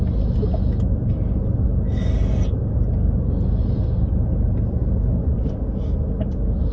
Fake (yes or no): no